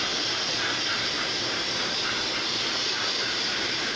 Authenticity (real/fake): fake